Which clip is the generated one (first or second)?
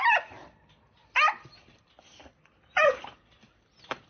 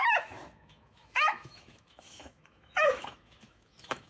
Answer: second